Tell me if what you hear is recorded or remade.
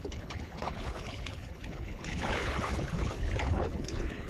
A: remade